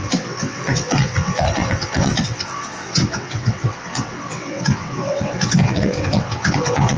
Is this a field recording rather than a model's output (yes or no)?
no